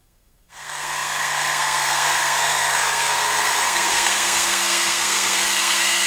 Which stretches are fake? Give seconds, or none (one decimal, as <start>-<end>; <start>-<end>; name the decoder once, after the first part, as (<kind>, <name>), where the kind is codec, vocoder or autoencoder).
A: 0.0-6.1 (codec, SNAC)

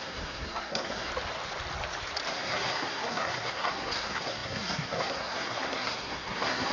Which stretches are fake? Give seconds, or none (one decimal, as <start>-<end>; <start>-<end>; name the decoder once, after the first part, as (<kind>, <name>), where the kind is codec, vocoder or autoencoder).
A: 0.0-1.1 (codec, SNAC); 2.3-6.7

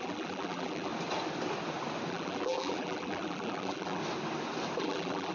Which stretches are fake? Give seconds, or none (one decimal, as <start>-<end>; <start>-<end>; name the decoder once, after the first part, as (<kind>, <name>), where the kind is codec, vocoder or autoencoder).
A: 0.0-0.9 (vocoder, BigVGAN v2); 2.1-4.0; 4.8-5.3

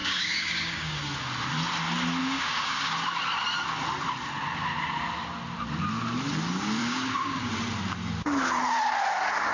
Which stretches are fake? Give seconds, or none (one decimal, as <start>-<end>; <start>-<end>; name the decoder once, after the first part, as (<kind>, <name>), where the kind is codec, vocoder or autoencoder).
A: 0.0-1.0 (codec, DAC); 2.2-2.9; 6.8-7.5

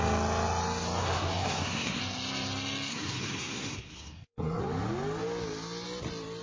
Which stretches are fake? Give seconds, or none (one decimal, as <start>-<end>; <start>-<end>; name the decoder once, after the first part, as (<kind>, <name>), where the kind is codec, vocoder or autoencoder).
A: 1.0-2.0 (codec, SNAC); 2.9-4.6

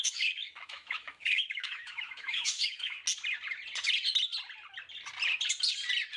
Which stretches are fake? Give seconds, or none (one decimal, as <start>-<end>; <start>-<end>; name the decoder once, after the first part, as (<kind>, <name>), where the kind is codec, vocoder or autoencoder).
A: 0.0-3.0 (autoencoder, DAC-VAE)

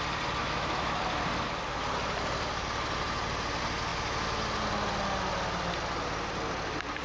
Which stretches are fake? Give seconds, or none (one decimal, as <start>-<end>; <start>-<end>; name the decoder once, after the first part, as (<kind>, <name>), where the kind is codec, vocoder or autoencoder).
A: 0.4-1.0 (autoencoder, DAC-VAE)

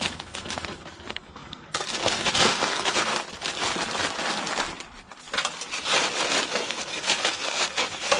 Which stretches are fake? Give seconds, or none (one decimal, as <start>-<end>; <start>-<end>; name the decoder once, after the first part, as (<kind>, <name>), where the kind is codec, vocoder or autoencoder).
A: 0.0-3.1 (codec, SNAC); 6.5-8.2